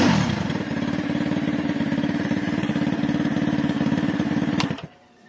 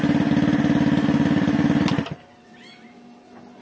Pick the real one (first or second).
second